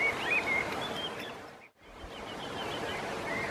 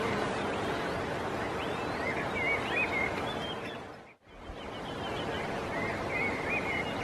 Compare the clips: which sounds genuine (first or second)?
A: second